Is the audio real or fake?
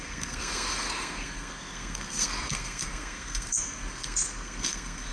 fake